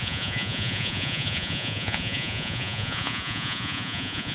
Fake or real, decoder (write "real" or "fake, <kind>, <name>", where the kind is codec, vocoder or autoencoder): fake, vocoder, Vocos